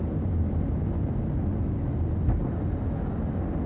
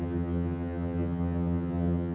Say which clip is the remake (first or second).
second